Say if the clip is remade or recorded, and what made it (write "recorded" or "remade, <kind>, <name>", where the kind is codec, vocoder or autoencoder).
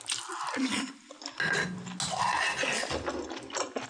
recorded